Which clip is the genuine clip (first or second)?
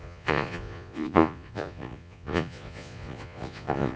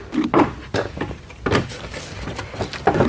second